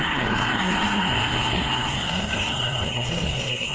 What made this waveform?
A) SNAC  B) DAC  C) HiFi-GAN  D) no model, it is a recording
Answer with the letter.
A